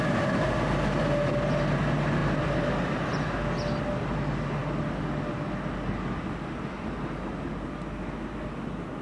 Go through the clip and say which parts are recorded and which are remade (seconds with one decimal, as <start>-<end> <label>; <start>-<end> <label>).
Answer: 0.0-2.2 recorded; 2.2-2.7 remade; 2.7-9.0 recorded

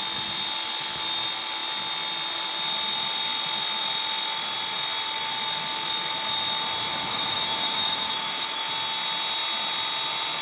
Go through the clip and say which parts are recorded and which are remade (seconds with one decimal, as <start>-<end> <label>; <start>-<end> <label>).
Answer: 0.0-6.9 recorded; 6.9-8.7 remade; 8.7-10.4 recorded

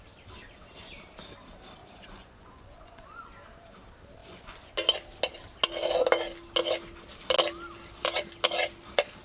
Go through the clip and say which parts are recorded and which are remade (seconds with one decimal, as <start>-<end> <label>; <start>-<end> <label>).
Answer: 0.0-1.8 recorded; 1.8-3.3 remade; 3.3-4.2 recorded; 4.2-4.7 remade; 4.7-9.2 recorded

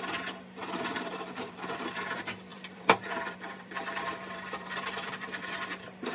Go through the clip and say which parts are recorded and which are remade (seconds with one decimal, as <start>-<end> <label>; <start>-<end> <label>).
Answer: 0.0-0.6 recorded; 0.6-2.0 remade; 2.0-2.5 recorded; 2.5-6.1 remade